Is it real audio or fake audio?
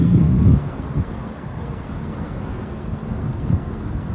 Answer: fake